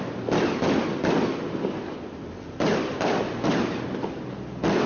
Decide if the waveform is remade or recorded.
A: recorded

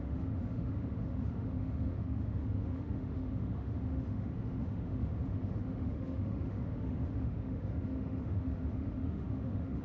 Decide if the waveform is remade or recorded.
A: remade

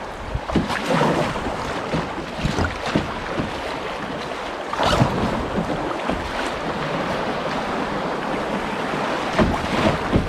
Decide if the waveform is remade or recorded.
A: recorded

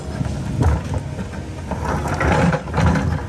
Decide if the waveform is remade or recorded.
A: recorded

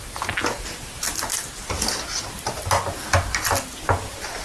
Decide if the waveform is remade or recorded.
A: recorded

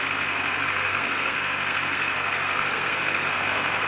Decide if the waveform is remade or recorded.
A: remade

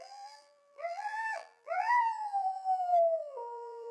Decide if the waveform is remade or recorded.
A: remade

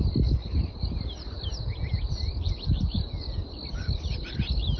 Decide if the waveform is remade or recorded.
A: recorded